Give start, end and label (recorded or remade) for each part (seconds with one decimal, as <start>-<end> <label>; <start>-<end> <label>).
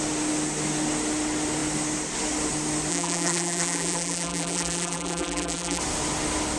0.0-2.9 recorded; 2.9-5.8 remade; 5.8-6.6 recorded